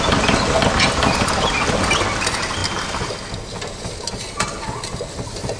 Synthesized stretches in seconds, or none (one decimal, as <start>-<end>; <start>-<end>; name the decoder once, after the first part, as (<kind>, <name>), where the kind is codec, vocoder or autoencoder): none